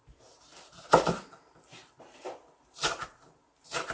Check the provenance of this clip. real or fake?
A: fake